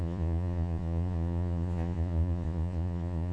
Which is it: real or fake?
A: fake